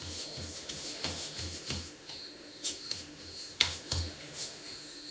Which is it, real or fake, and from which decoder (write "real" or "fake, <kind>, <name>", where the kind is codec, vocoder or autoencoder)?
fake, autoencoder, DAC-VAE